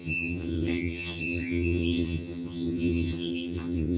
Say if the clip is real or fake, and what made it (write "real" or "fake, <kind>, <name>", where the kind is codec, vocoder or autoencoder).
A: fake, vocoder, HiFi-GAN